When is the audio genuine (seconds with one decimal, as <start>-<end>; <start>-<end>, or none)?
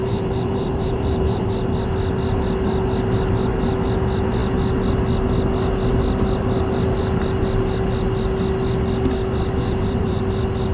1.5-9.6; 10.2-10.7